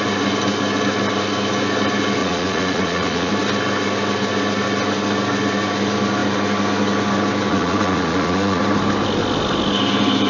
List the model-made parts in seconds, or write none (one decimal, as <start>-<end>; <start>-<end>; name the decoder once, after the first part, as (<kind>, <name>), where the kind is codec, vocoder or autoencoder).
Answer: 2.2-3.3 (vocoder, Vocos); 7.5-8.6